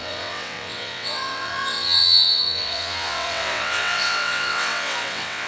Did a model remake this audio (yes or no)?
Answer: yes